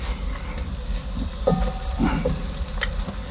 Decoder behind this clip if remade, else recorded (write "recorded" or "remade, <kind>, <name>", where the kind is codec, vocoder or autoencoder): recorded